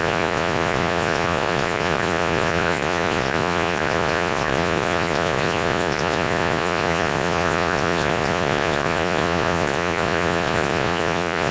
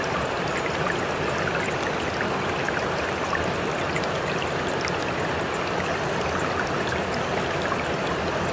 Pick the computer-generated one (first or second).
first